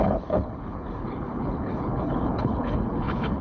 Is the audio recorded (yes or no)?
no